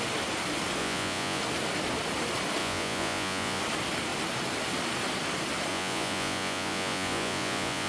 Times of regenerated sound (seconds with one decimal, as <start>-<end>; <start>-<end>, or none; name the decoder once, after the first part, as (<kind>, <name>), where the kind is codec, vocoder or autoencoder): 0.8-1.4 (vocoder, Vocos); 2.6-3.6; 5.7-7.9